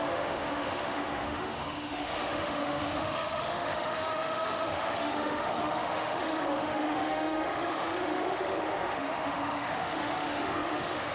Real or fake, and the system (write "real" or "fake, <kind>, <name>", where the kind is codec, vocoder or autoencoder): fake, autoencoder, DAC-VAE